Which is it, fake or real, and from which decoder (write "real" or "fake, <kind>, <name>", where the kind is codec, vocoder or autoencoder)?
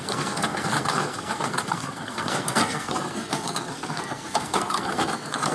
fake, codec, SNAC